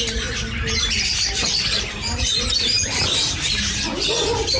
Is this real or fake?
real